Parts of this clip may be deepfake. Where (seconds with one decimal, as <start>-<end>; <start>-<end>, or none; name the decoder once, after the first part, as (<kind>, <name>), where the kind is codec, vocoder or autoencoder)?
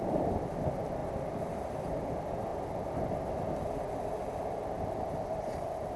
0.0-2.5 (vocoder, BigVGAN v2); 4.8-6.0